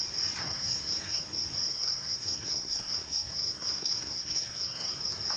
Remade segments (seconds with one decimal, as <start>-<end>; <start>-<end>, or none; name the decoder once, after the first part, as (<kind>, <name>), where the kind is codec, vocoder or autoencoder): 0.4-1.2 (codec, SNAC); 1.7-4.9